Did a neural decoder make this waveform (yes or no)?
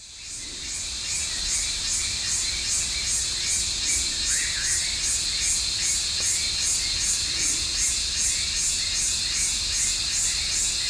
no